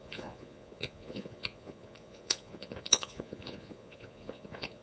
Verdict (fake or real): fake